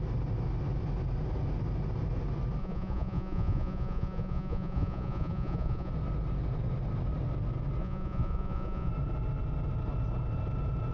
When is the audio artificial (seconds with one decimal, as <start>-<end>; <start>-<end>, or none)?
2.6-5.9; 7.8-8.9